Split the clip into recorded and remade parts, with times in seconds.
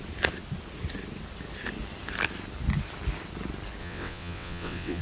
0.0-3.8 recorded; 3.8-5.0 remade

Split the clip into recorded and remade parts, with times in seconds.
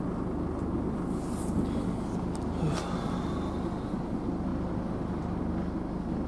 0.0-6.3 recorded